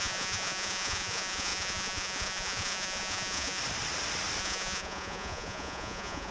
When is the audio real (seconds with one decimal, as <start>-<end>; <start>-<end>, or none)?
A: 3.6-4.4